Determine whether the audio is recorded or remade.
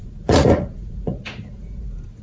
remade